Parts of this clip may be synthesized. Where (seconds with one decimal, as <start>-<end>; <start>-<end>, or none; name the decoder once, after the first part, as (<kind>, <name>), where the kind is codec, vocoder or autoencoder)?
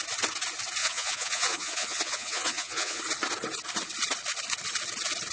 0.8-3.0 (vocoder, Vocos)